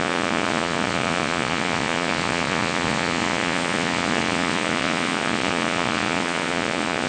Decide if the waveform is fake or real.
fake